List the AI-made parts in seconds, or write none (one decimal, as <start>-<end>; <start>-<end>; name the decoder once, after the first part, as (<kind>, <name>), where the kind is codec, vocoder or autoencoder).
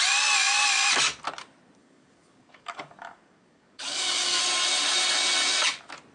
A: 1.8-4.4 (codec, DAC)